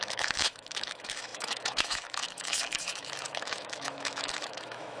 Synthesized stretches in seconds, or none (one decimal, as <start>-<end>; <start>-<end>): 0.0-5.0